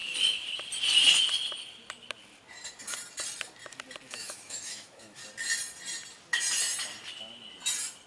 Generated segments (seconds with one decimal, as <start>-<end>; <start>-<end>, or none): 4.1-5.2